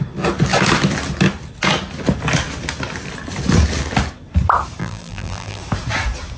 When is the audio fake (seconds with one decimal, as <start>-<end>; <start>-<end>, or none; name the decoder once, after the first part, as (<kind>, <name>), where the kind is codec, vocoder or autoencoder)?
4.8-5.6 (vocoder, BigVGAN v2)